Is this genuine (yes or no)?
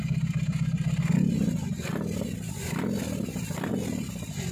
yes